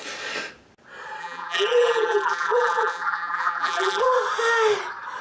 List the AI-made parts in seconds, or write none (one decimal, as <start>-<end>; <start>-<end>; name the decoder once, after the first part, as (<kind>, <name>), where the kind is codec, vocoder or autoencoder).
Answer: 1.2-4.1 (vocoder, BigVGAN v2)